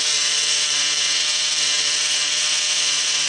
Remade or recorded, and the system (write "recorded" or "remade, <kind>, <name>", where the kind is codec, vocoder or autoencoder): remade, vocoder, WaveNeXt